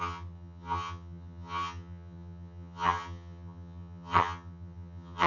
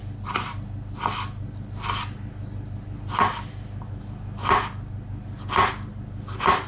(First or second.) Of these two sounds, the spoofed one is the first